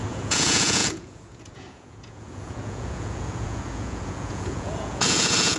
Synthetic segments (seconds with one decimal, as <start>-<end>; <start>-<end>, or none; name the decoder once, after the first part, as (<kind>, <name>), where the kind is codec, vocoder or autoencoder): 0.0-5.6 (vocoder, Vocos)